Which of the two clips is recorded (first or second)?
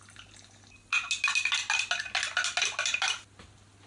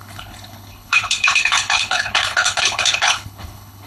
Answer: first